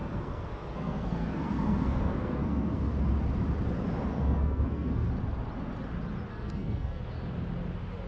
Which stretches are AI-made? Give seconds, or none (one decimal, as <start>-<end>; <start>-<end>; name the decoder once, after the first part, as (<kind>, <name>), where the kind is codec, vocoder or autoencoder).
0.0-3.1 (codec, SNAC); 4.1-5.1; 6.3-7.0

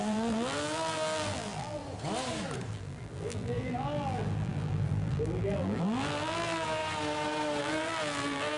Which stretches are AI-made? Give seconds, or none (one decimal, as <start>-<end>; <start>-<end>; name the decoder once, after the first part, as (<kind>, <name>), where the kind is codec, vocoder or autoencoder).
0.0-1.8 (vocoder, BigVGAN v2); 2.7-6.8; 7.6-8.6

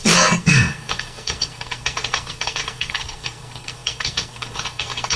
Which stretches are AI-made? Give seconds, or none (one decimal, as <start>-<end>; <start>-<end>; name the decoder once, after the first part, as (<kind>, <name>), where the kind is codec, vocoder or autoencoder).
0.0-5.2 (codec, SNAC)